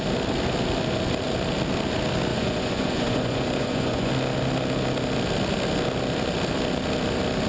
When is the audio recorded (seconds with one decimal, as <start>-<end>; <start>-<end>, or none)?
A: 0.0-2.3; 4.1-7.5